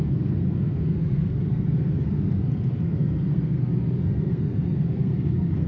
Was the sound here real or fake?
fake